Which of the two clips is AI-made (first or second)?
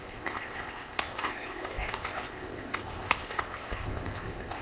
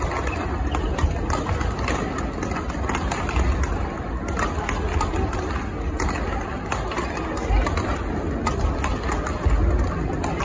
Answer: first